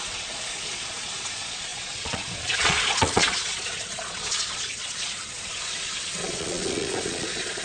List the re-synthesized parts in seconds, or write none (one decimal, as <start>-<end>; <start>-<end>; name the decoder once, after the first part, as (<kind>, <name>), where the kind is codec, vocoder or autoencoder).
0.0-7.6 (vocoder, Vocos)

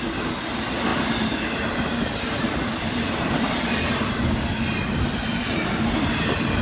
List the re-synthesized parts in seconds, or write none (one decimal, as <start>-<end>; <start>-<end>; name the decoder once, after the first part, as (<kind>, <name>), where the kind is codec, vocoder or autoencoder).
0.9-4.5 (vocoder, BigVGAN v2)

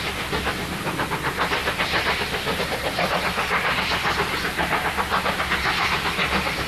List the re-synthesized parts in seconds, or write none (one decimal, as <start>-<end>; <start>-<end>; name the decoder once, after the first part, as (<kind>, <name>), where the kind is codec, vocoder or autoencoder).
0.0-1.6 (vocoder, BigVGAN v2); 2.6-6.7

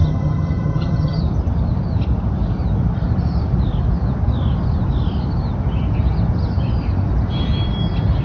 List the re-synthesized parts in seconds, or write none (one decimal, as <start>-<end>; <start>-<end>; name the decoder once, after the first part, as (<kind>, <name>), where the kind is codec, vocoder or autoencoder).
0.0-1.2 (vocoder, HiFi-GAN)

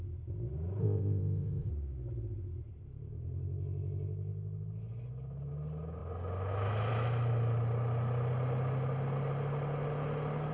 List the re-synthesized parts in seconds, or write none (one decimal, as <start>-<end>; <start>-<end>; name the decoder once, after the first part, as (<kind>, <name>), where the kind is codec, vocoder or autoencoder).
0.8-1.7 (codec, ZipCodec)

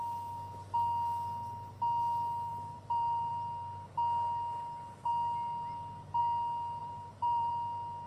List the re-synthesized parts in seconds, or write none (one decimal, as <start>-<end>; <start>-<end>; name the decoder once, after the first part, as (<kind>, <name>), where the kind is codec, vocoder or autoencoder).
2.5-3.3 (vocoder, BigVGAN v2); 6.8-7.5